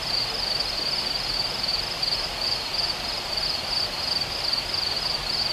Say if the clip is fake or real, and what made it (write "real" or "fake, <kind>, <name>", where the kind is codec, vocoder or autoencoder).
fake, vocoder, BigVGAN v2